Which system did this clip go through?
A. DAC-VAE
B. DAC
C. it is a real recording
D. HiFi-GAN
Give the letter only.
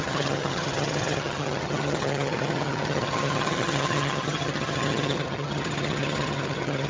D